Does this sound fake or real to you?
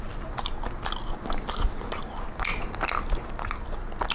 real